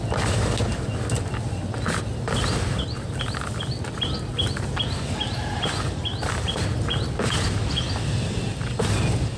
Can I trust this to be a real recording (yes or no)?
yes